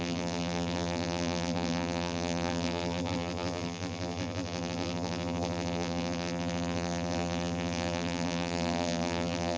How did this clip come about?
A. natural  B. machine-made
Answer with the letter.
B